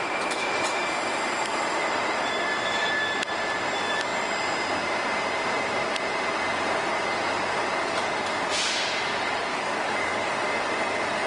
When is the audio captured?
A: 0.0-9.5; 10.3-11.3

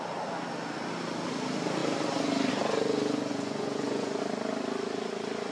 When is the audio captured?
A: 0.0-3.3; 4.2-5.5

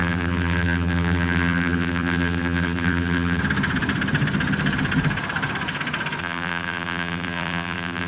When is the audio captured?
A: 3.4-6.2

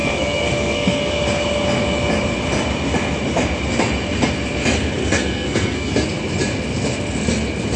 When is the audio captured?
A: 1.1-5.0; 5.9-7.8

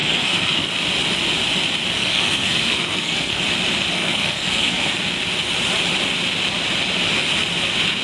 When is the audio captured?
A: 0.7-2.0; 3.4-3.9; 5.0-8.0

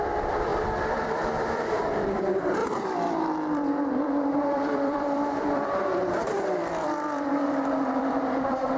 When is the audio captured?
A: none